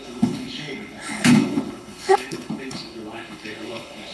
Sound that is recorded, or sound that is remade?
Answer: remade